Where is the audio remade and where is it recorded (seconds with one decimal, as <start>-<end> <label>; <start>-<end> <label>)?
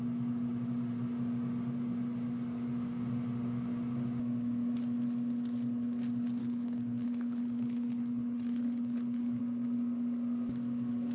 0.0-6.4 recorded; 6.4-9.4 remade; 9.4-11.1 recorded